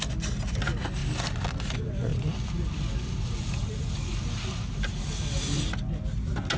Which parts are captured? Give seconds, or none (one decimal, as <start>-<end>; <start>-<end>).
0.0-6.6